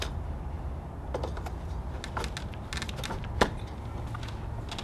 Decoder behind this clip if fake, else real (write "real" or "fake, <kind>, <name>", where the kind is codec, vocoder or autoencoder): real